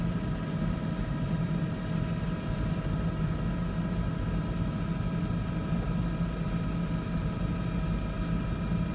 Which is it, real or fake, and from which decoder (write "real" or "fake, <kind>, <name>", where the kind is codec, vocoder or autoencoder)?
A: real